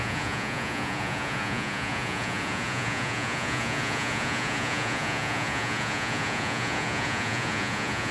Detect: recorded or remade remade